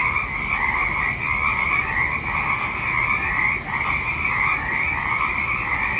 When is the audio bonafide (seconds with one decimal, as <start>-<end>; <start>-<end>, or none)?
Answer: 0.0-6.0